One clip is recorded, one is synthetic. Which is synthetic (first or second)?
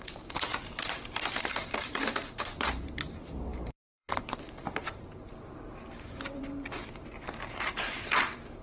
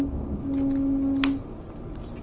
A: first